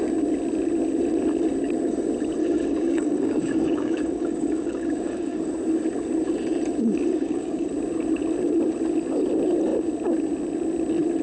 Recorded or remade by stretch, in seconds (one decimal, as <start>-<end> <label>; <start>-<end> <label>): 0.0-2.4 recorded; 2.4-5.5 remade; 5.5-7.1 recorded; 7.1-7.7 remade; 7.7-11.2 recorded